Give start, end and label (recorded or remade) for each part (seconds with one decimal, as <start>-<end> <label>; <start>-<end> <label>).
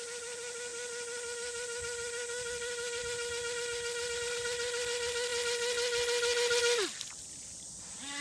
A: 0.0-8.2 recorded